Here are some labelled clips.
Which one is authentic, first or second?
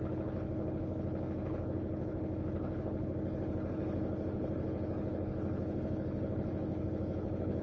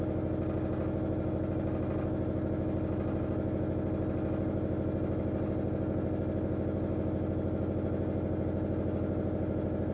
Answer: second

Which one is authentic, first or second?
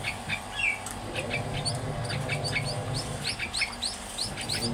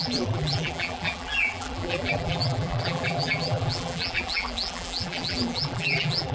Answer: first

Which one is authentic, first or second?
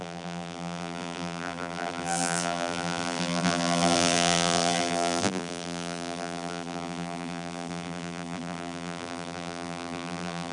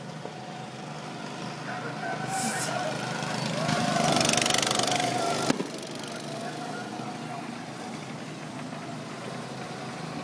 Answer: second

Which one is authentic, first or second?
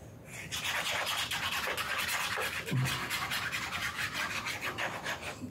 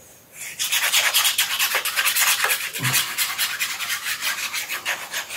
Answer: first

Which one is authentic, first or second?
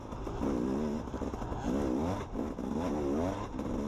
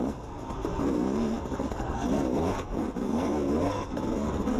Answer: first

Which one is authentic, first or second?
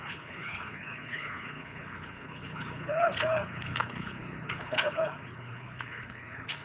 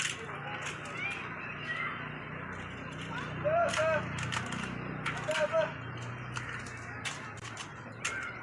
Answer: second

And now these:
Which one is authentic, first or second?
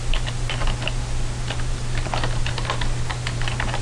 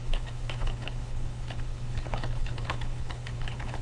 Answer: first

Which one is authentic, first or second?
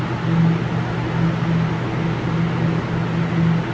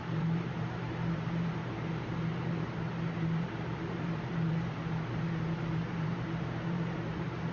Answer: first